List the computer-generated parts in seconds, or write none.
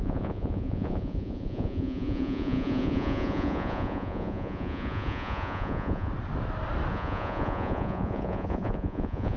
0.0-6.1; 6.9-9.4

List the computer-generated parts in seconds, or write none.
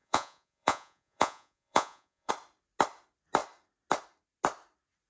0.0-2.3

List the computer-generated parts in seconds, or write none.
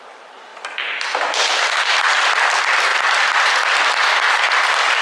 none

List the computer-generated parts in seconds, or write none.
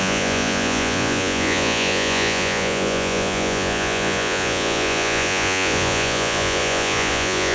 0.0-7.5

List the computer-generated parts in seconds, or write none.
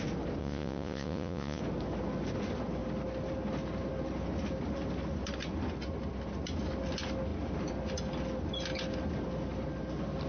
0.4-1.6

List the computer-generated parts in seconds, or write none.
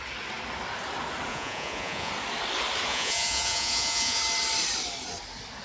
1.3-2.1; 2.9-4.2